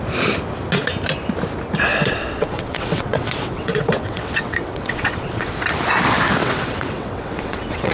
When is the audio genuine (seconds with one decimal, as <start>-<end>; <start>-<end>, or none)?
0.0-1.9; 5.5-6.4

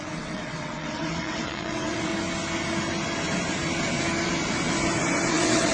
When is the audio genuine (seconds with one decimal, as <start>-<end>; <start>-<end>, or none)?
2.1-5.3

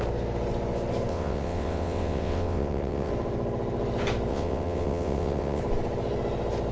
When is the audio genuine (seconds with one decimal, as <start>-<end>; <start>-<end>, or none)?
0.0-1.1; 3.1-4.3; 5.6-6.7